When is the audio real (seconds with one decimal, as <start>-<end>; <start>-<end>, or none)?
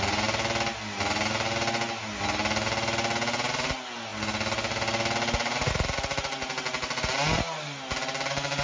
0.0-8.6